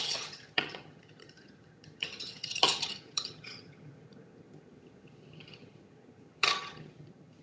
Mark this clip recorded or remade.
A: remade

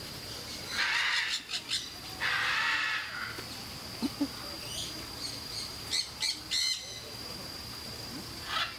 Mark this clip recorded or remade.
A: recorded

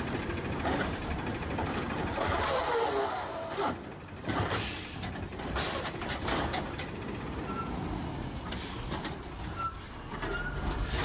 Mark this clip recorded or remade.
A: remade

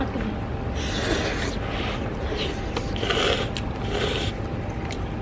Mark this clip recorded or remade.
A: recorded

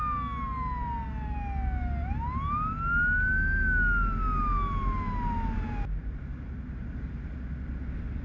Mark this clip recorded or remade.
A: recorded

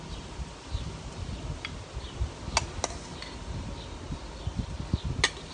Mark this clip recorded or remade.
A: recorded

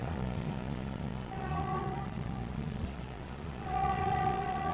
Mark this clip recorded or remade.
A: remade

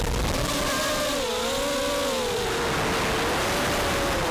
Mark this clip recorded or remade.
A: recorded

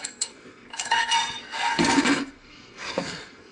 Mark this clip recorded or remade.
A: remade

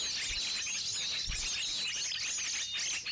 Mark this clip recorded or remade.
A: recorded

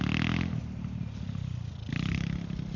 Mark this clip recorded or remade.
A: recorded